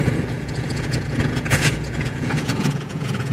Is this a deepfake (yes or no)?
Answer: yes